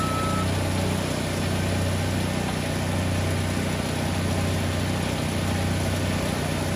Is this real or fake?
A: real